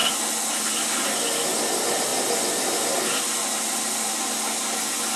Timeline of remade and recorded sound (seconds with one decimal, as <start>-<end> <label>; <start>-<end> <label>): 0.0-5.2 recorded

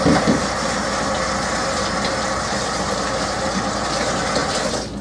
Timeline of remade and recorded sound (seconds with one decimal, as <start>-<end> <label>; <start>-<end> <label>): 0.0-5.0 recorded

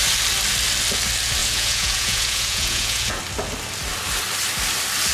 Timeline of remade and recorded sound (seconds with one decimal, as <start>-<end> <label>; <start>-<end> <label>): 0.0-1.4 recorded; 1.4-3.2 remade; 3.2-5.1 recorded

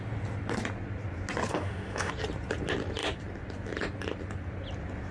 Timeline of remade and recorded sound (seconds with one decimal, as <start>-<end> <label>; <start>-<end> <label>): 0.0-1.5 recorded; 1.5-2.1 remade; 2.1-5.1 recorded

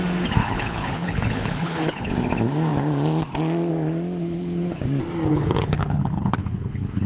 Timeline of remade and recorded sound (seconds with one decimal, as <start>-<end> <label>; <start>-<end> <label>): 0.0-0.4 recorded; 0.4-2.1 remade; 2.1-4.2 recorded; 4.2-4.8 remade; 4.8-5.3 recorded; 5.3-7.1 remade